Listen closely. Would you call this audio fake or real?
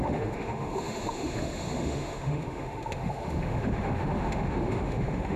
fake